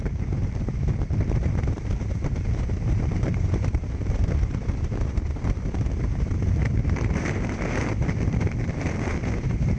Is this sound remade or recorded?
remade